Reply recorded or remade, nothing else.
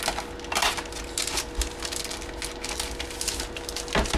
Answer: recorded